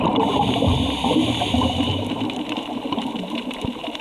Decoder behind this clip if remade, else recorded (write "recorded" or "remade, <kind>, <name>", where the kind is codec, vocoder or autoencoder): remade, vocoder, BigVGAN v2